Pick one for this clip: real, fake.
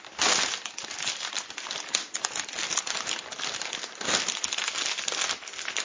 fake